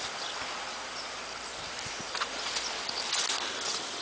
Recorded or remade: remade